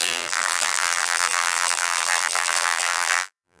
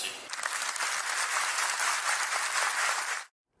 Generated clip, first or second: first